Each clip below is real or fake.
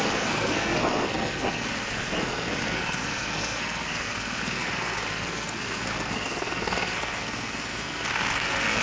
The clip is fake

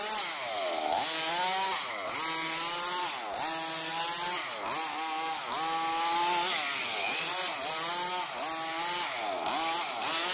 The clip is real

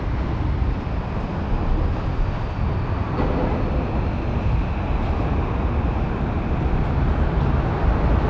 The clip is real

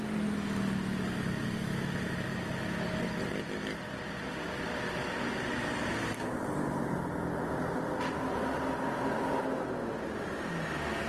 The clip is real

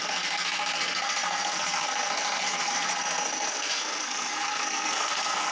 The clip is fake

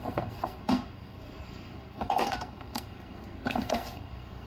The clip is fake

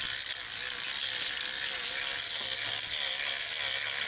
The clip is real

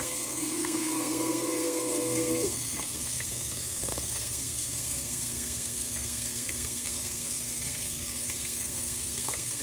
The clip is fake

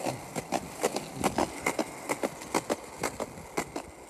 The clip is real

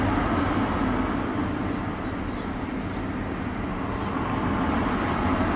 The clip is real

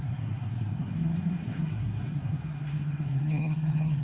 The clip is fake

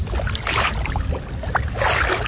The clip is real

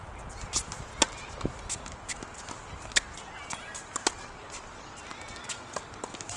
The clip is real